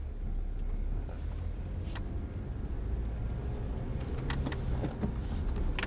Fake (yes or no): no